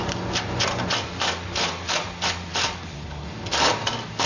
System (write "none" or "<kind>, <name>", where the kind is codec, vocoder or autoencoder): none